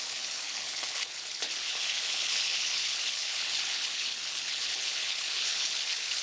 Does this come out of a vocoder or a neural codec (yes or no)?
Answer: yes